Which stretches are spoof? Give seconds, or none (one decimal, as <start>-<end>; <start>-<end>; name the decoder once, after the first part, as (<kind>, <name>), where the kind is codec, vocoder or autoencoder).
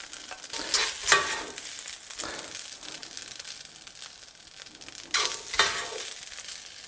none